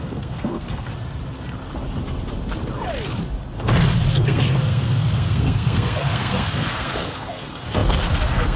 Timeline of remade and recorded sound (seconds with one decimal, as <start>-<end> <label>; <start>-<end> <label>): 0.0-0.9 remade; 0.9-4.1 recorded; 4.1-8.6 remade